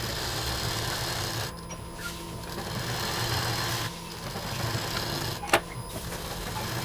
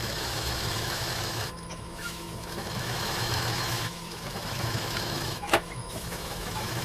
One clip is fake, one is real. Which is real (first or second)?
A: first